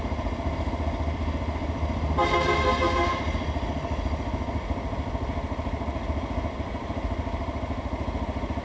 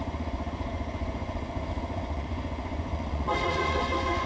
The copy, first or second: second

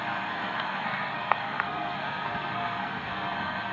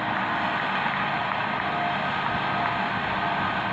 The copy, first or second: first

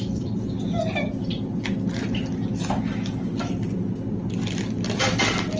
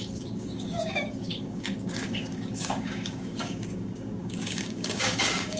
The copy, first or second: second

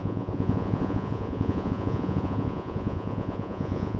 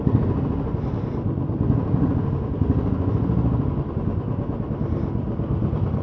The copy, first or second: first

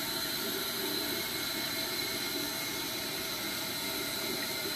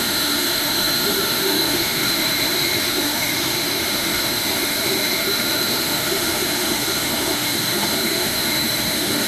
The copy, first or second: second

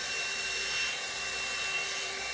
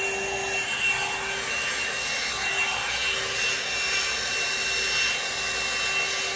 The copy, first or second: first